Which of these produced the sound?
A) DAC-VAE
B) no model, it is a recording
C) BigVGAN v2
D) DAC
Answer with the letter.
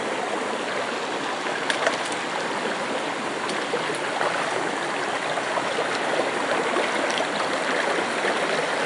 B